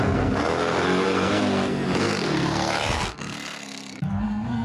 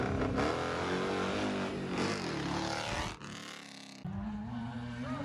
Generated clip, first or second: first